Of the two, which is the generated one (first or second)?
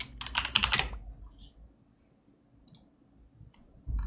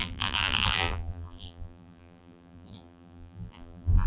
second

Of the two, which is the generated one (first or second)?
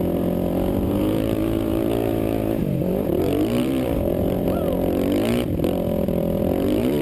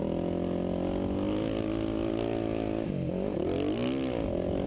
first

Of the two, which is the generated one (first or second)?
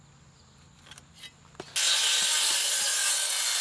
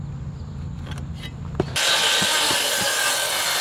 second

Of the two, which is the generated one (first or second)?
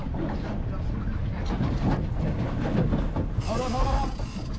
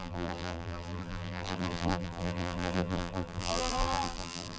second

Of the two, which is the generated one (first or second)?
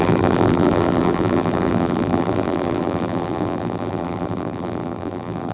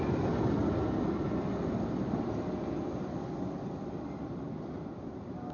first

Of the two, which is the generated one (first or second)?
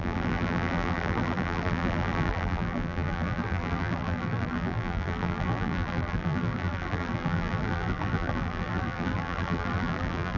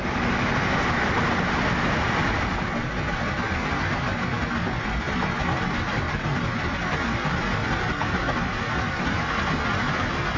first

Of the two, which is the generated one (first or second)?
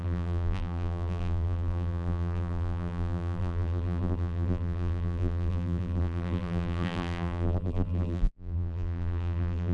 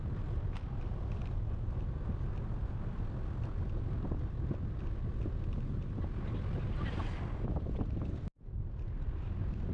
first